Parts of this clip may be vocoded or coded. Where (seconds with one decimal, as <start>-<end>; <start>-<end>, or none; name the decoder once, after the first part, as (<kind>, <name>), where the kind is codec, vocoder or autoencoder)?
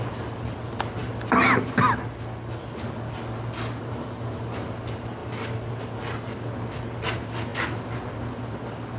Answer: none